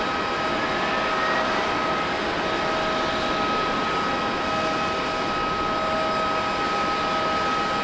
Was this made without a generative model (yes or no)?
yes